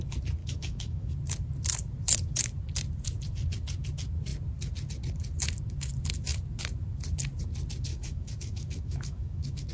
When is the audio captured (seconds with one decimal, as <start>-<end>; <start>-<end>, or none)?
0.0-0.4; 1.1-7.9